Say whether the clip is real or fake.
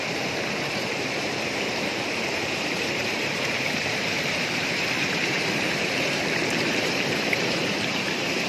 fake